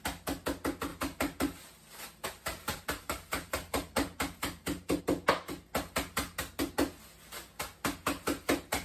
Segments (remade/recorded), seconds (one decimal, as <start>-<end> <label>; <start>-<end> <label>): 0.0-0.9 recorded; 0.9-5.0 remade; 5.0-8.8 recorded